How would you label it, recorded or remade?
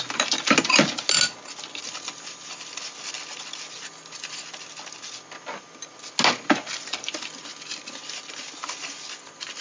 recorded